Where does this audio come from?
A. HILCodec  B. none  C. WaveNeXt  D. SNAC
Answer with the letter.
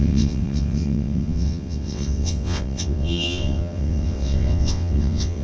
C